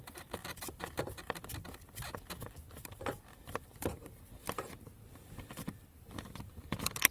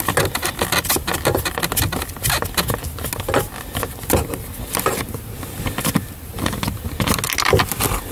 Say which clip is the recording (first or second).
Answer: second